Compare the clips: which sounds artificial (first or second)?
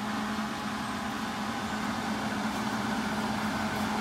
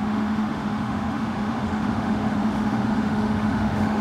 second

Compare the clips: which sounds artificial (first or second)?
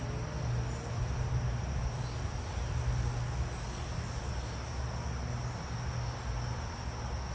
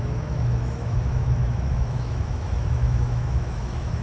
second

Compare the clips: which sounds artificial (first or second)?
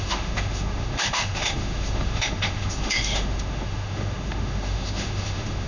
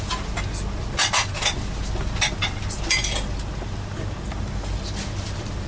first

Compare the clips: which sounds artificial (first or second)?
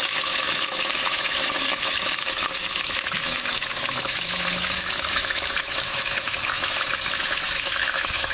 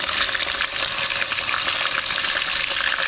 first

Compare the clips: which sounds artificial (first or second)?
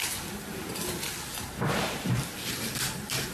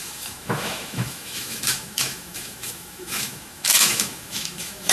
second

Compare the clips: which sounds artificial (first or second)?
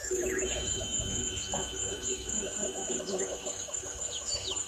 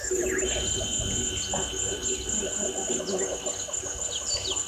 first